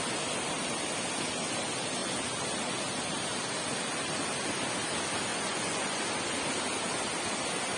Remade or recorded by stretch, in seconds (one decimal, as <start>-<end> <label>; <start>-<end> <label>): 0.0-5.3 recorded; 5.3-6.0 remade; 6.0-7.8 recorded